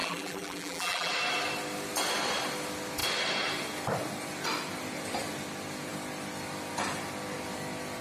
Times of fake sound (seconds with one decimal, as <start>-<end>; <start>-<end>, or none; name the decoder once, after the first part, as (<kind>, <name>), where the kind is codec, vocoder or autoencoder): 0.0-1.1 (vocoder, BigVGAN v2)